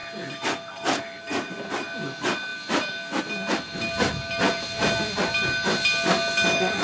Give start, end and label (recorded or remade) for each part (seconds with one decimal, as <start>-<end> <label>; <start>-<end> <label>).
0.0-6.8 recorded

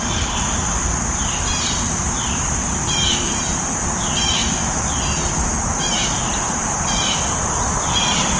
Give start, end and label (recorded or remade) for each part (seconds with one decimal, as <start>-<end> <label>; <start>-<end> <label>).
0.0-4.4 remade; 4.4-6.6 recorded; 6.6-8.4 remade

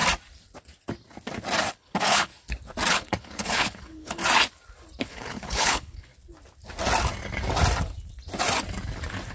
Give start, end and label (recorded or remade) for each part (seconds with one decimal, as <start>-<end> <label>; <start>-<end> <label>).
0.0-1.7 recorded; 1.7-2.3 remade; 2.3-2.9 recorded; 2.9-4.2 remade; 4.2-5.0 recorded; 5.0-6.1 remade; 6.1-9.3 recorded

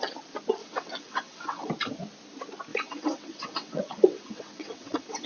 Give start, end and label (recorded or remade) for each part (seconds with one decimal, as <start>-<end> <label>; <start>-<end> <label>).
0.0-0.6 recorded; 0.6-1.7 remade; 1.7-2.7 recorded; 2.7-5.3 remade

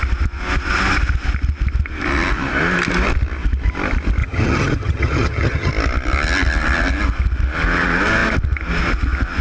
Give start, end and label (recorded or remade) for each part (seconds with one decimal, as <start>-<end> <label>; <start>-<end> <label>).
0.0-4.2 recorded; 4.2-5.7 remade; 5.7-9.4 recorded

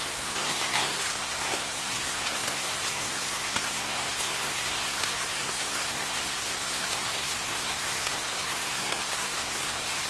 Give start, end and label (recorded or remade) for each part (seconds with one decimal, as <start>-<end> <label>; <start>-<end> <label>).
0.0-10.1 remade